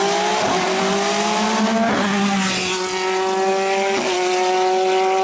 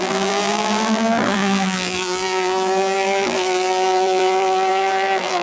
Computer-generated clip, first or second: second